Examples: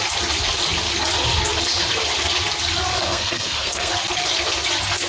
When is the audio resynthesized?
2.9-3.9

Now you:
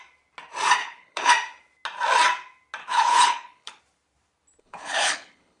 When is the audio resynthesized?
0.8-1.3; 2.8-3.8; 4.6-5.6

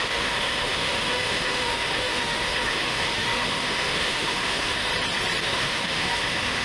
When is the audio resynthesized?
0.0-4.9; 5.4-6.6

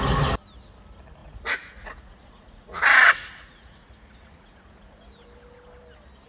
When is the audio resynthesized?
1.2-5.0

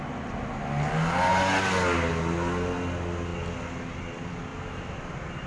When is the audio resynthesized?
none

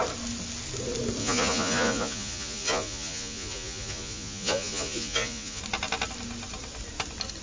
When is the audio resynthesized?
1.2-5.6

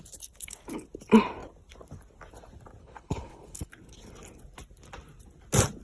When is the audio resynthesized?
2.8-3.7